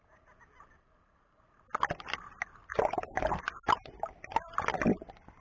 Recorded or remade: recorded